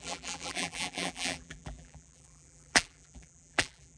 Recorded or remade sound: remade